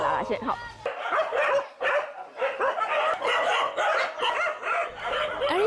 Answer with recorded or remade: recorded